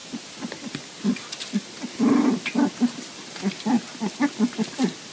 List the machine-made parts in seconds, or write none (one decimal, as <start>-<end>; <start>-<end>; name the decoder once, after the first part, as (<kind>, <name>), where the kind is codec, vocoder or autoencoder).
none